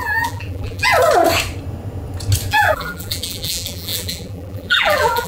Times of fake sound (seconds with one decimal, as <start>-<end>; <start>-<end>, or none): 0.0-0.9; 2.5-5.3